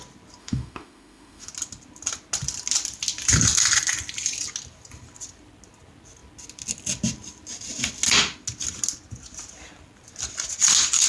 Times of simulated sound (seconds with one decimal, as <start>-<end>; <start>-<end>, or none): 0.4-1.5